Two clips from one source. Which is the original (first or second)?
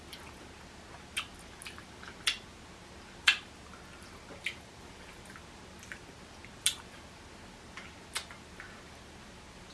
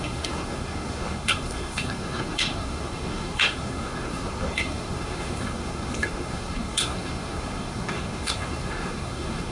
first